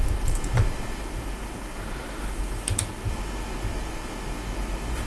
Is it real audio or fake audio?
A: fake